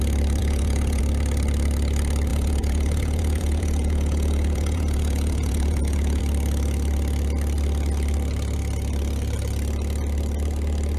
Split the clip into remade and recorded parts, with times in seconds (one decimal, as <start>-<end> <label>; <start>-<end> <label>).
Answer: 0.0-0.4 recorded; 0.4-1.0 remade; 1.0-2.3 recorded; 2.3-6.2 remade; 6.2-11.0 recorded